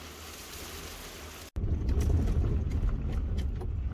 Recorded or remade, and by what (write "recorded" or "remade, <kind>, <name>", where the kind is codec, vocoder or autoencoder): recorded